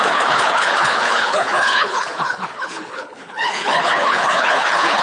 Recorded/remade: remade